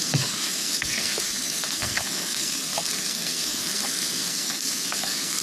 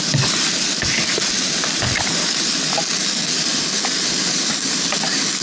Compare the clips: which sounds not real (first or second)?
first